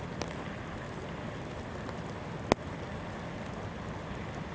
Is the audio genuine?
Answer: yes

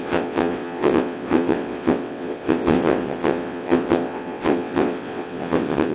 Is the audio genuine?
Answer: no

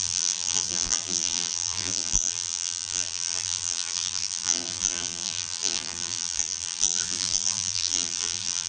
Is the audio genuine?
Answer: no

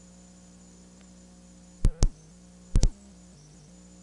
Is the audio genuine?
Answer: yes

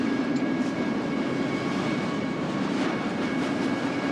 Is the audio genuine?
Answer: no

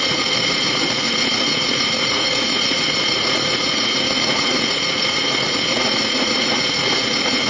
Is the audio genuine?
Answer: no